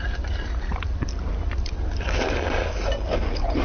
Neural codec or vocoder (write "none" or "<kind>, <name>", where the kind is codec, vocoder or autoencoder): none